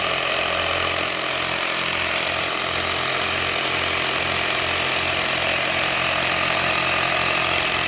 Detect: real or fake real